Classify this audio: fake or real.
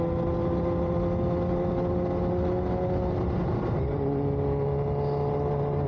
real